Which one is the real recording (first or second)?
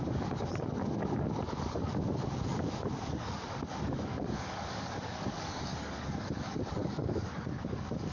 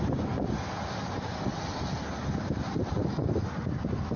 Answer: second